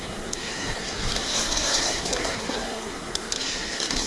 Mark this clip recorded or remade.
remade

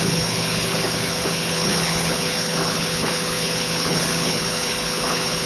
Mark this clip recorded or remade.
remade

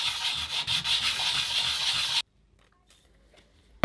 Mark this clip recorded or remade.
recorded